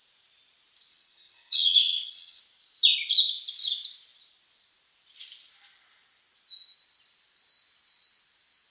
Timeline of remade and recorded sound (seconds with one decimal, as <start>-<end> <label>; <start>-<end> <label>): 0.0-0.9 recorded; 0.9-2.4 remade; 2.4-8.7 recorded

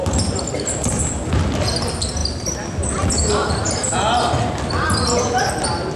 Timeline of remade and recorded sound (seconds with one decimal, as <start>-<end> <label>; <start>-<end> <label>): 0.0-6.0 recorded

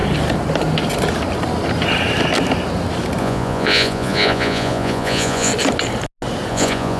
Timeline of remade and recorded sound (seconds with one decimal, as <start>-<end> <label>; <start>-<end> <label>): 0.0-3.2 recorded; 3.2-5.5 remade; 5.5-6.5 recorded; 6.5-7.0 remade

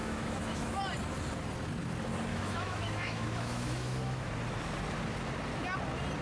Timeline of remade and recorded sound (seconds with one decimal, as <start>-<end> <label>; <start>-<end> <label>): 0.0-0.8 remade; 0.8-2.3 recorded; 2.3-4.3 remade; 4.3-6.2 recorded

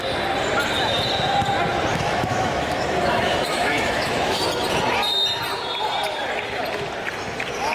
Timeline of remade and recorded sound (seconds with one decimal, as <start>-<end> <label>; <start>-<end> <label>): 0.0-1.9 recorded; 1.9-4.4 remade; 4.4-7.7 recorded

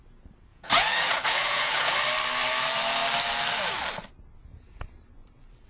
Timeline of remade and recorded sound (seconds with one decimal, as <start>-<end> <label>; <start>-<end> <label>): 0.0-0.5 recorded; 0.5-1.9 remade; 1.9-5.7 recorded

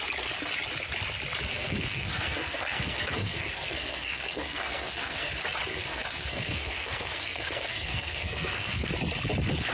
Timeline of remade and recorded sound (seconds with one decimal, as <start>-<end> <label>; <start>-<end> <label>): 0.0-1.5 recorded; 1.5-5.3 remade; 5.3-5.7 recorded; 5.7-8.9 remade; 8.9-9.7 recorded

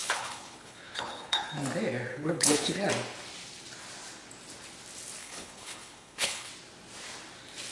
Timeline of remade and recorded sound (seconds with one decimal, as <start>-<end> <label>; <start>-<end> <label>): 0.0-1.5 remade; 1.5-2.1 recorded; 2.1-2.9 remade; 2.9-5.2 recorded; 5.2-6.5 remade; 6.5-7.7 recorded